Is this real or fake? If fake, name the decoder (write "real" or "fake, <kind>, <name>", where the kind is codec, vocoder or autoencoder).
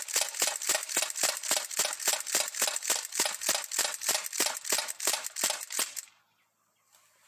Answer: real